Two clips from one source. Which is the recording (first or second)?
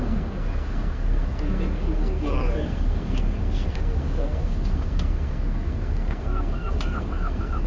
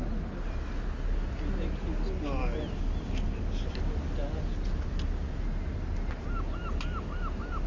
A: second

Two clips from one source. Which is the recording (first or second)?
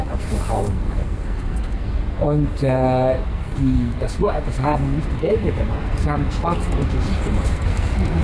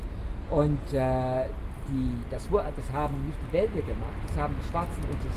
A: second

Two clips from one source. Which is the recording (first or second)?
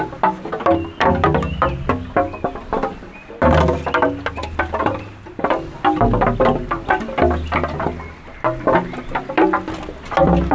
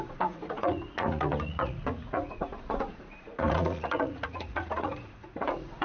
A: first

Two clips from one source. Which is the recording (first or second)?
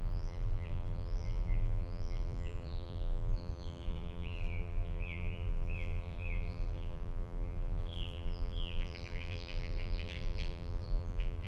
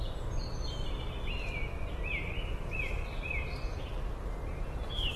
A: second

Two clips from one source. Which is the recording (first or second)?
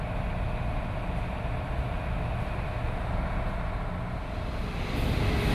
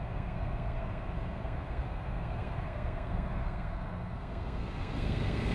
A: first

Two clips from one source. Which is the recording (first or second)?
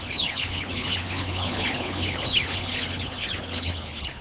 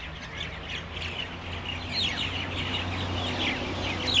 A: second